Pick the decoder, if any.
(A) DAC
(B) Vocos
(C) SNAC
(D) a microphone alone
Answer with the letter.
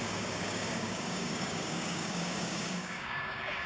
A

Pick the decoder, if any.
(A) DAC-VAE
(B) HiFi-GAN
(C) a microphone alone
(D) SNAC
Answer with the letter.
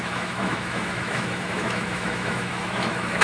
A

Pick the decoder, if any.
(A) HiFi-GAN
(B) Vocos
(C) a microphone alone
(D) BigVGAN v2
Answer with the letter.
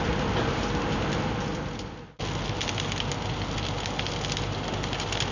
C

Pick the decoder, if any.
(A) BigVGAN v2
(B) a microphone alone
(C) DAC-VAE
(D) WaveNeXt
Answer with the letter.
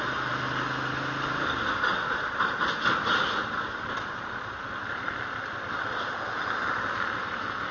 B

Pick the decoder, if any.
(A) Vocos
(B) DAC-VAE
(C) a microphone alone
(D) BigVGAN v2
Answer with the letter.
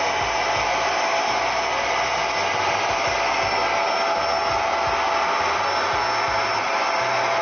C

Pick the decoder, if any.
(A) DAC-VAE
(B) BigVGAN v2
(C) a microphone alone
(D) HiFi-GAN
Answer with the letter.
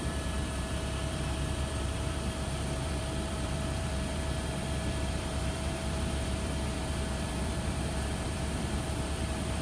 B